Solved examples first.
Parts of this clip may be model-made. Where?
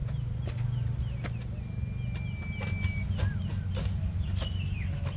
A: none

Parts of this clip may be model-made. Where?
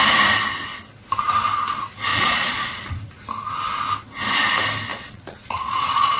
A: 2.1-2.9; 4.9-6.2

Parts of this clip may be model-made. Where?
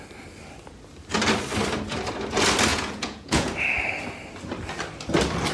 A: 2.7-3.5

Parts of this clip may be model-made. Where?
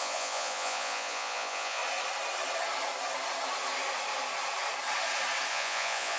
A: 0.0-1.8; 5.5-6.2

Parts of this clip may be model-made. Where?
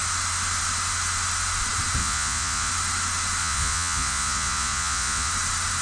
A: 2.0-2.7; 3.4-5.3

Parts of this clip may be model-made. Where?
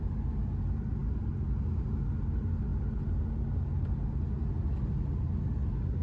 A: none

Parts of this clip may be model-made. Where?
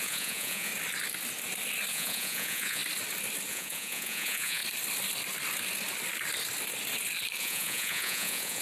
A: 0.0-0.7; 1.9-2.8; 3.5-4.6; 7.4-8.6